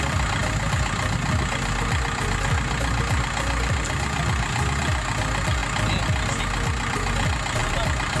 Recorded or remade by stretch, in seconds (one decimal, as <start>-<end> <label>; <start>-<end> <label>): 0.0-8.2 recorded